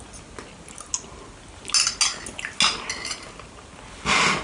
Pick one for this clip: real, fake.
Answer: real